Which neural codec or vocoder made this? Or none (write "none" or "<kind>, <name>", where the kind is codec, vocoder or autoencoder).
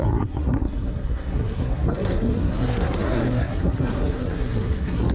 codec, SNAC